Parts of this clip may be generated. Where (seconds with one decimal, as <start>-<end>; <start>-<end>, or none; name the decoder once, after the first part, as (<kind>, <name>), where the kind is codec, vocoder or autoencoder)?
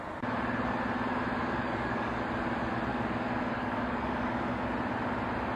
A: 1.4-2.2 (codec, DAC); 2.9-4.6